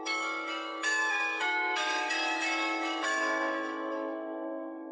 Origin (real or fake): fake